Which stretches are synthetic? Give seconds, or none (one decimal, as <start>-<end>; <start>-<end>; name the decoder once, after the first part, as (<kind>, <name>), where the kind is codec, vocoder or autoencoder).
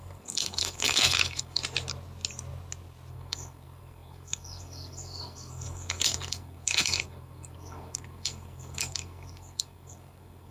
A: 0.0-1.6 (codec, SNAC); 3.1-10.5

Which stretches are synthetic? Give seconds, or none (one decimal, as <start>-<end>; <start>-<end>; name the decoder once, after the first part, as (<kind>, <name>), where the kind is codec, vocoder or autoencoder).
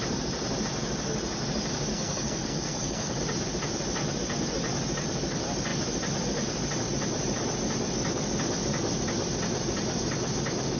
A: 1.9-3.2 (codec, SNAC)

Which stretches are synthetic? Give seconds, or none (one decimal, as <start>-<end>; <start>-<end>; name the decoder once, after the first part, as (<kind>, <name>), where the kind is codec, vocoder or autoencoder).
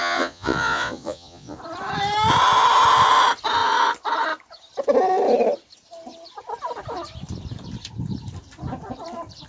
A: 0.0-1.6 (vocoder, Vocos)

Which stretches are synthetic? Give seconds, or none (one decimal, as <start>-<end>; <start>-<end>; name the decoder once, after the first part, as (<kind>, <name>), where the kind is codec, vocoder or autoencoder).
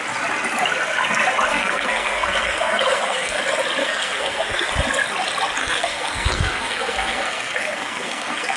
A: 1.5-3.4 (codec, SNAC); 3.8-4.7; 5.6-8.6